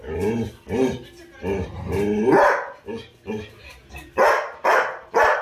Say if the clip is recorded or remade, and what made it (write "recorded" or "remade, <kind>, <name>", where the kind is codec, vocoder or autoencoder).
recorded